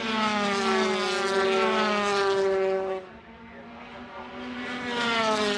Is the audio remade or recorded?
recorded